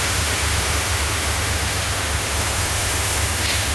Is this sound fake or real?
fake